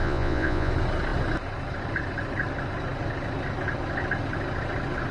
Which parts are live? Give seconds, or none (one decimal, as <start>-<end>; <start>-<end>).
0.7-5.1